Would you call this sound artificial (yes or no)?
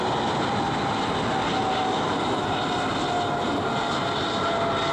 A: no